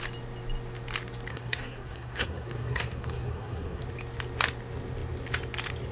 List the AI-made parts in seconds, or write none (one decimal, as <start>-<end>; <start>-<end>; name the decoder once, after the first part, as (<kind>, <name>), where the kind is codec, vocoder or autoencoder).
1.3-3.8 (codec, SNAC)